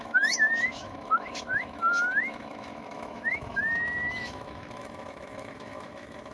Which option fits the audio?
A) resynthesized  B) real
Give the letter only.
A